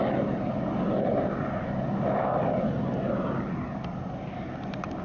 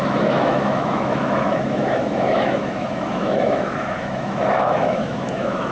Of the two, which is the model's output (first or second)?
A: second